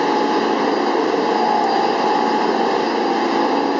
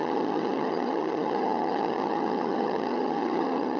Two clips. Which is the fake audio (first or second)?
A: second